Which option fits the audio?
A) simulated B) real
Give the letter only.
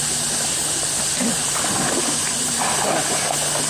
B